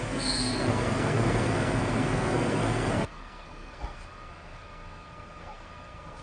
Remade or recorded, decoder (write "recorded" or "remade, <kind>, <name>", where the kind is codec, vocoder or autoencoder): remade, codec, SNAC